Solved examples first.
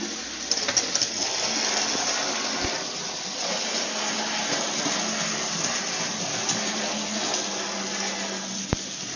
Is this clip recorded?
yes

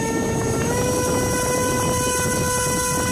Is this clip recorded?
yes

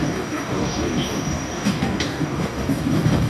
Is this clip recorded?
no